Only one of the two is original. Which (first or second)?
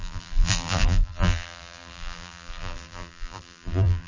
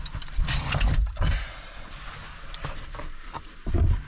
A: second